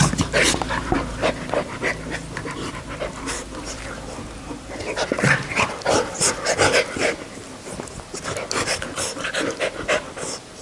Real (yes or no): yes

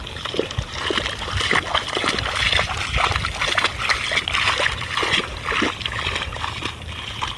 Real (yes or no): yes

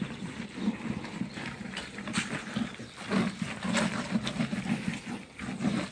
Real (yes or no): yes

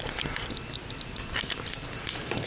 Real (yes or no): no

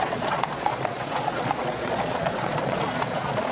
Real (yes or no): no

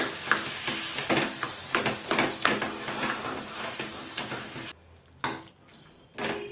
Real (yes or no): no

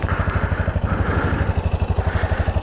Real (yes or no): yes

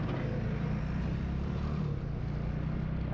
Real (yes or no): yes